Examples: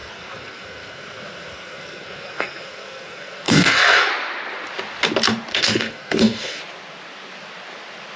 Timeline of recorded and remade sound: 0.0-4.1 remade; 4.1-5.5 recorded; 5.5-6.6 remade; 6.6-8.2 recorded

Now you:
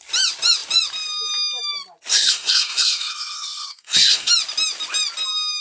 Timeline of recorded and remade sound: 0.0-2.1 recorded; 2.1-4.3 remade; 4.3-5.6 recorded